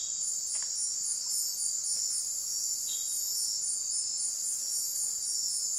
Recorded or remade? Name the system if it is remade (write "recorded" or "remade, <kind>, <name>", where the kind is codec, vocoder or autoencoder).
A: recorded